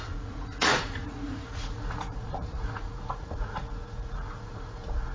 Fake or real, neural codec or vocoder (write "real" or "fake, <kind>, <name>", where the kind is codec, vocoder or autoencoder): fake, vocoder, Vocos